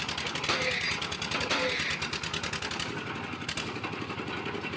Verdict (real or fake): real